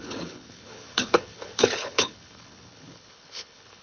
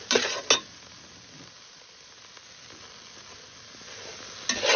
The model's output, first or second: first